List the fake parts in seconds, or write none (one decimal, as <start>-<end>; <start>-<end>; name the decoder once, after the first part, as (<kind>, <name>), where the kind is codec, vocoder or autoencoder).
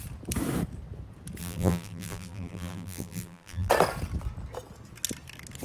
1.4-3.7 (vocoder, BigVGAN v2)